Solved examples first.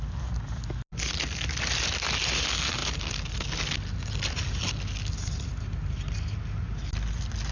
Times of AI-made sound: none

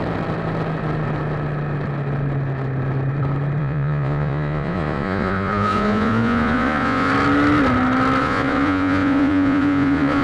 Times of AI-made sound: 3.6-7.1; 8.2-10.2

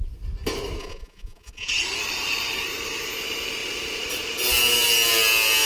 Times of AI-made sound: 0.8-1.7

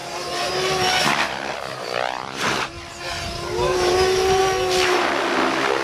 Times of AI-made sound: 1.7-2.7; 3.7-4.4

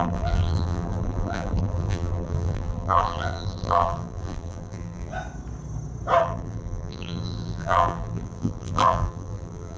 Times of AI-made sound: 0.0-5.1; 6.2-9.8

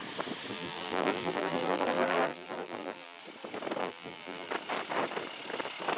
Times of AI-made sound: 0.5-3.2; 3.8-4.5